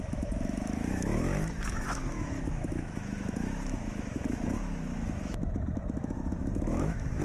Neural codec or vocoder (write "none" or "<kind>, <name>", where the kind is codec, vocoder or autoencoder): autoencoder, DAC-VAE